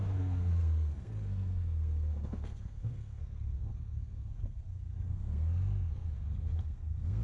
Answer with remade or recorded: remade